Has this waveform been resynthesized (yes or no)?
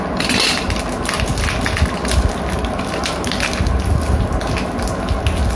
no